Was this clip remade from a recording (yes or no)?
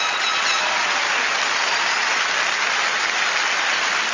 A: no